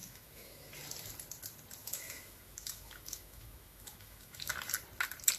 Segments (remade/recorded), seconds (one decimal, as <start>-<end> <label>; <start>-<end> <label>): 0.0-0.7 remade; 0.7-1.8 recorded; 1.8-4.5 remade; 4.5-5.4 recorded